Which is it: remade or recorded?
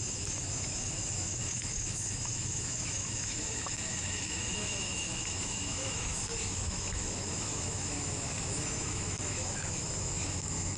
remade